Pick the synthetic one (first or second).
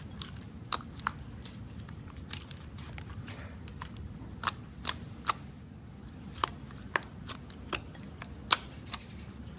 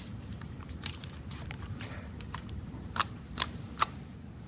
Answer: second